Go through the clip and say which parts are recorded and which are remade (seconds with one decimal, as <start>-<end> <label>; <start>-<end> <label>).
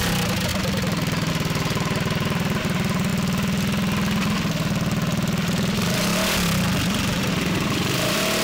0.0-0.5 remade; 0.5-1.3 recorded; 1.3-3.1 remade; 3.1-7.2 recorded; 7.2-8.4 remade